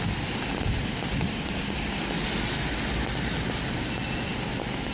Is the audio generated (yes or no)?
no